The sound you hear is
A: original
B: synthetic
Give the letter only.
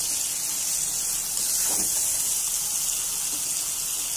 A